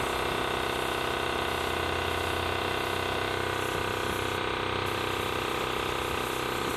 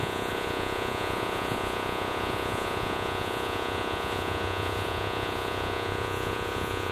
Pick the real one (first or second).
first